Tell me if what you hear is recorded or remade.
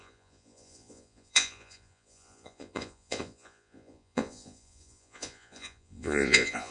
remade